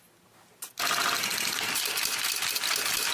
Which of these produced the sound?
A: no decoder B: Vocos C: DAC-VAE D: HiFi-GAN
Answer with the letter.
A